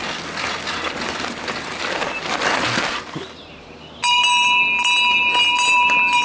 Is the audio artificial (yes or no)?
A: no